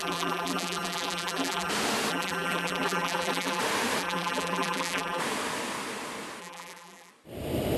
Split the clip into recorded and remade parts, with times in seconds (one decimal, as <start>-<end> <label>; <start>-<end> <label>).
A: 0.0-1.7 remade; 1.7-2.1 recorded; 2.1-3.6 remade; 3.6-4.0 recorded; 4.0-5.2 remade; 5.2-6.4 recorded; 6.4-7.1 remade; 7.1-7.8 recorded